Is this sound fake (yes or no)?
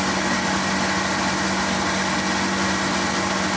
no